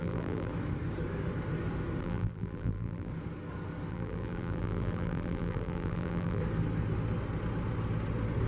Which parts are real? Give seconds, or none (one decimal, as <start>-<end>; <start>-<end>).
0.5-2.0; 3.1-3.9; 6.4-8.5